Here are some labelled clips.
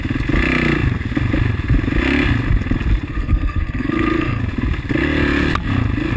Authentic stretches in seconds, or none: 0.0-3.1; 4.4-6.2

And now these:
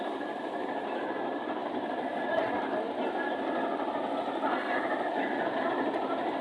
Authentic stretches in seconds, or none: 0.0-6.4

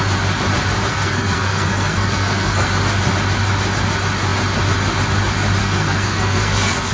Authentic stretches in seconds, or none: 0.0-0.9; 2.7-5.6

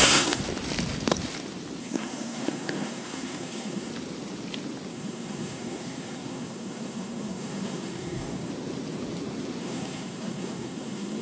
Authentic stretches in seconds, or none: 0.4-1.8; 3.9-4.9; 8.5-9.6

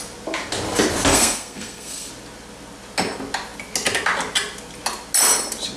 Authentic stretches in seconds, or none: 0.0-1.1; 2.1-5.8

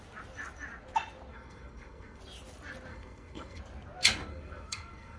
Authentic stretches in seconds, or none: 0.0-1.3; 2.2-2.9; 3.6-4.3